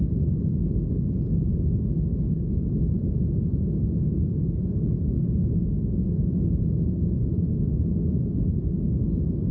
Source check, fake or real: real